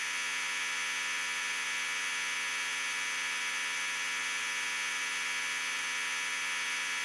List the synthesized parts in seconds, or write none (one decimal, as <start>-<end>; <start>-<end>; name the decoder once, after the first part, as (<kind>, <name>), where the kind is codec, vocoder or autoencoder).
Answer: none